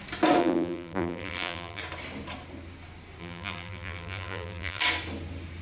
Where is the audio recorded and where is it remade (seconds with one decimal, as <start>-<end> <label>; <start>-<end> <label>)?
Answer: 0.0-0.4 recorded; 0.4-1.8 remade; 1.8-3.2 recorded; 3.2-4.8 remade; 4.8-5.6 recorded